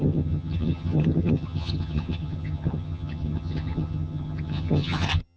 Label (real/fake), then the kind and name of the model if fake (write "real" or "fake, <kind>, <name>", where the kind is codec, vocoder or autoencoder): fake, vocoder, HiFi-GAN